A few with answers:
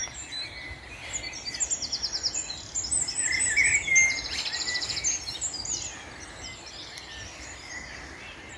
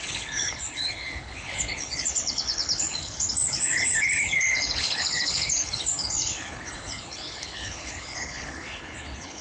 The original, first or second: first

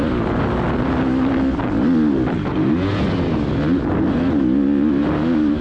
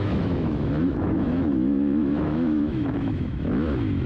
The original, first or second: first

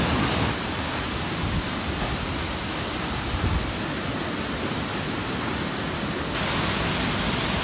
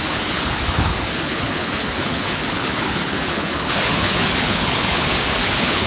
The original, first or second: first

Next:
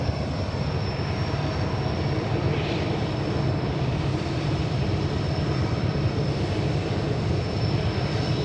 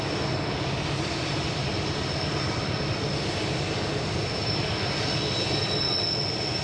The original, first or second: second